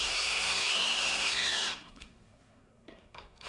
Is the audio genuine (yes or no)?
no